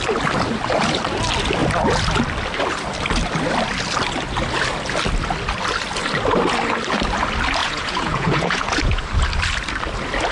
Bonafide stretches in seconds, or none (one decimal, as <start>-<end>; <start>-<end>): 0.0-7.6; 9.0-10.3